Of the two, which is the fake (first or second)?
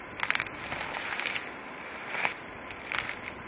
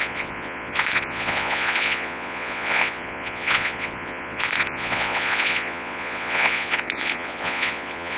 second